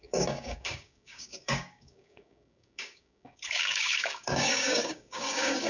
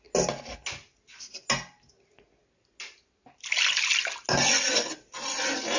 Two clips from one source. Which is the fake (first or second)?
first